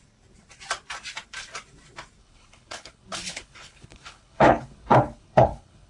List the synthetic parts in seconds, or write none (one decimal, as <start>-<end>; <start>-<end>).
2.2-5.9